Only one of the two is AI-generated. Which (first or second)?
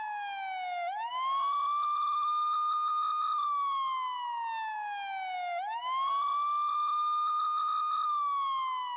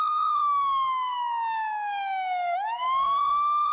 second